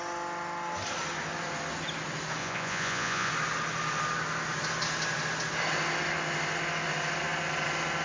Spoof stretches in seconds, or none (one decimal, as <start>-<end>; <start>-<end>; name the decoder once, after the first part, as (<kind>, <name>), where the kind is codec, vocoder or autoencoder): 2.4-3.3 (vocoder, Vocos)